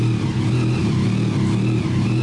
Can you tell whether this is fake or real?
real